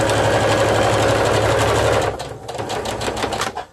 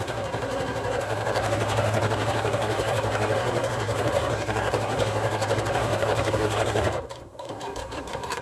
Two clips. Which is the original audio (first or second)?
first